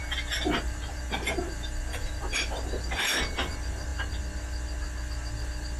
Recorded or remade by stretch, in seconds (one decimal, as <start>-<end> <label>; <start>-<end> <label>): 0.0-3.5 remade; 3.5-5.8 recorded